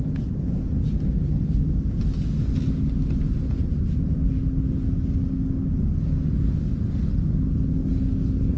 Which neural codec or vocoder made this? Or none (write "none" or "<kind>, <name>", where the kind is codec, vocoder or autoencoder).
none